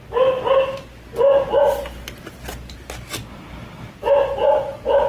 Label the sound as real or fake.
real